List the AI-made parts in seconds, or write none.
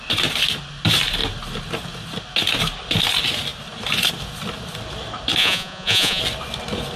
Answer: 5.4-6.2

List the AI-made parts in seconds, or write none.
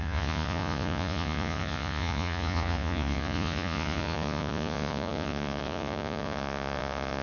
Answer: 0.0-7.2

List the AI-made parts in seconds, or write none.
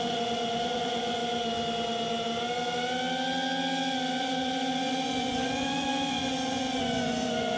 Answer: 0.0-1.2; 4.1-7.6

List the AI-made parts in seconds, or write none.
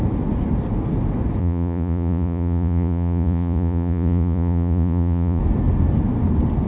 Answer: 1.4-5.4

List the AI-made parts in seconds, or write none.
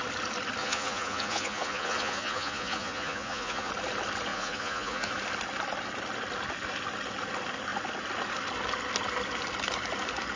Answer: 0.6-3.7; 4.3-5.1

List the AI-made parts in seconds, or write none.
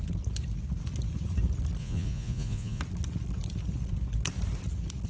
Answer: 1.8-2.8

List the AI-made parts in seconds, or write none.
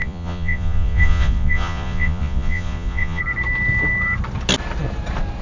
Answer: 0.0-3.2